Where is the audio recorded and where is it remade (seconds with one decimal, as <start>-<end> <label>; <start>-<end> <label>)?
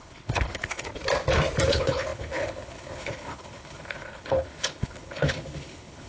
0.0-0.9 remade; 0.9-1.7 recorded; 1.7-6.1 remade